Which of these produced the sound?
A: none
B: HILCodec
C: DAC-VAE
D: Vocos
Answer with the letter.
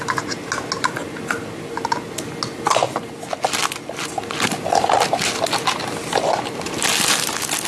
A